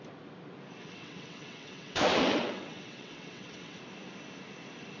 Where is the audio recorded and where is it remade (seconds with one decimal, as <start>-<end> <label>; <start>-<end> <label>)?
0.0-0.8 recorded; 0.8-3.8 remade; 3.8-5.0 recorded